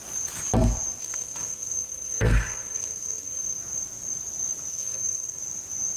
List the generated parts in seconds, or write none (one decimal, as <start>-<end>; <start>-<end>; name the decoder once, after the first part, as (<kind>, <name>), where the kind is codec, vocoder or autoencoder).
1.0-3.6 (codec, SNAC); 4.7-5.4